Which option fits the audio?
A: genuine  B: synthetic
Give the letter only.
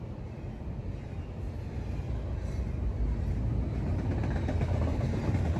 A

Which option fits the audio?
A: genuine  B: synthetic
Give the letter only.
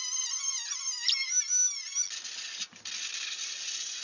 B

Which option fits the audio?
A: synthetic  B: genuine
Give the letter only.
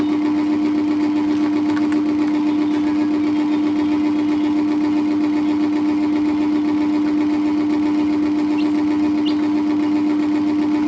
B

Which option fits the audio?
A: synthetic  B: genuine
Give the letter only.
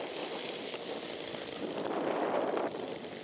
A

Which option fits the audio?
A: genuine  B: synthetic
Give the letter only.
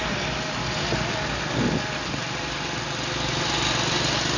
A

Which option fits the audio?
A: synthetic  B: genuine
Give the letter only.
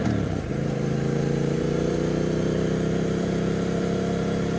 A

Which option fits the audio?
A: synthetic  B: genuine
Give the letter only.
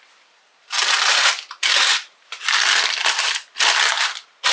A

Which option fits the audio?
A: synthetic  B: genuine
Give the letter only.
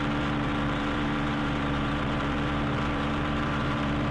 A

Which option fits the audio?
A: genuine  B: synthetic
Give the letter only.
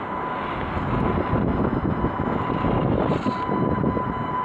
A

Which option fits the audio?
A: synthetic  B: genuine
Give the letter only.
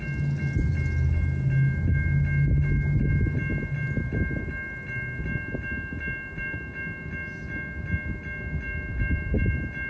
B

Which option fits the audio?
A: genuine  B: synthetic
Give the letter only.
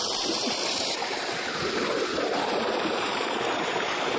A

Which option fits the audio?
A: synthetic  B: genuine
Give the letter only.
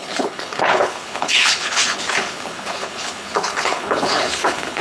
A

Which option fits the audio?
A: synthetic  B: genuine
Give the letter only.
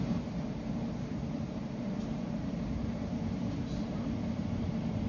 A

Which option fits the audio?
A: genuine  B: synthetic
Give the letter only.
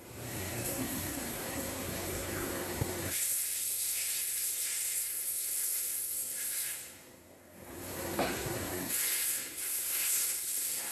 B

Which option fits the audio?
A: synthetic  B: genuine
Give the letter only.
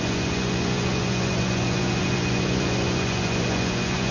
A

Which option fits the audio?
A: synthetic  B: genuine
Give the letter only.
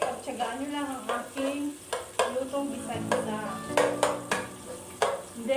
B